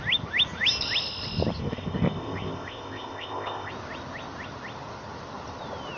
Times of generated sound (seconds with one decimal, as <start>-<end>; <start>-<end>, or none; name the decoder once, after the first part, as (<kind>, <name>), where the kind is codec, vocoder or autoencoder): 1.6-3.7 (codec, ZipCodec)